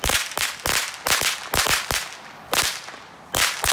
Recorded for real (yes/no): yes